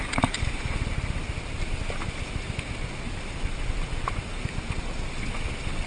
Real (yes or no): yes